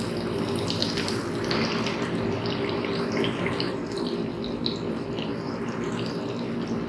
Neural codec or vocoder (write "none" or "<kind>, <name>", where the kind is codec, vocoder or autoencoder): none